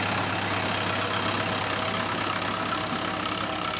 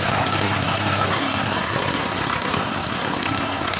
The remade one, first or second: second